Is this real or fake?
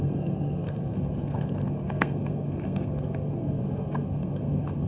fake